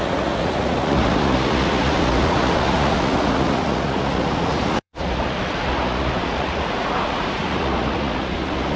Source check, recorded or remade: remade